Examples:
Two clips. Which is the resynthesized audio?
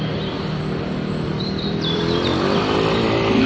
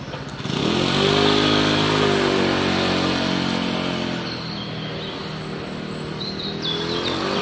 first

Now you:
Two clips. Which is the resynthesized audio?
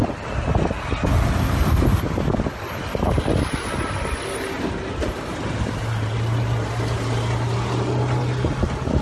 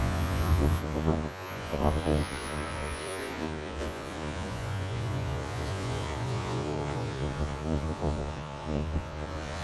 second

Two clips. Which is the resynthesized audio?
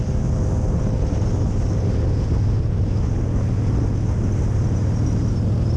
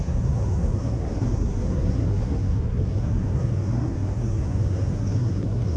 second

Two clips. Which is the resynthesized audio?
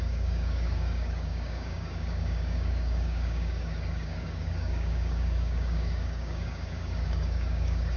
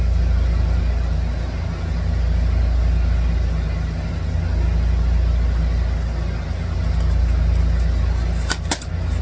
first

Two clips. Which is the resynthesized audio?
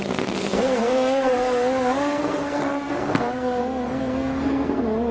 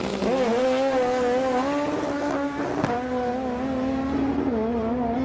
first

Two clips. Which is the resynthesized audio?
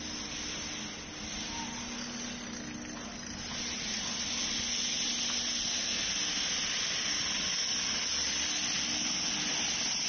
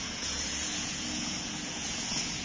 second